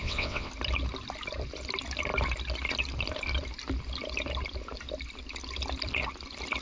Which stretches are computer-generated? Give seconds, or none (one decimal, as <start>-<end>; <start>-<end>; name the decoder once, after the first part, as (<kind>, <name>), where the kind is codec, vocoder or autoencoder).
0.0-0.5 (vocoder, WaveNeXt)